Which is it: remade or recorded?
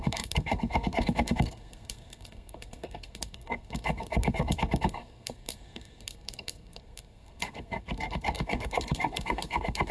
remade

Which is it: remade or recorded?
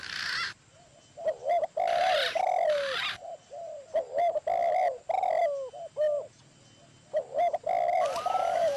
recorded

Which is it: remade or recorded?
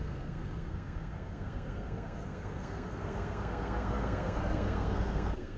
remade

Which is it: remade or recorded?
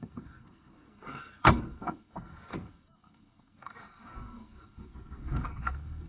remade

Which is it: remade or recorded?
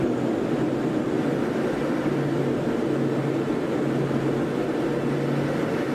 recorded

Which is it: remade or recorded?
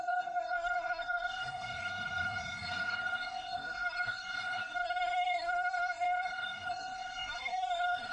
remade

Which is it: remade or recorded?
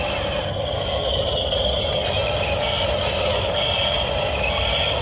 recorded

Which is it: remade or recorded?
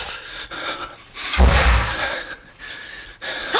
recorded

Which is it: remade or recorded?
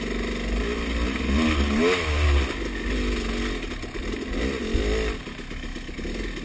recorded